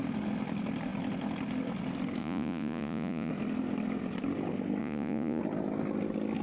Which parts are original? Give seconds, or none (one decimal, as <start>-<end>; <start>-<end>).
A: 0.0-2.2; 3.3-4.8; 5.4-6.4